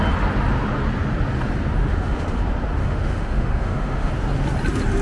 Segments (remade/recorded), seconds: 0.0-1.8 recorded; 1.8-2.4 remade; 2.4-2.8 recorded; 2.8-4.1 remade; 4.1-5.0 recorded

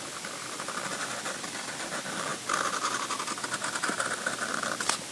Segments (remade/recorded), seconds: 0.0-5.1 recorded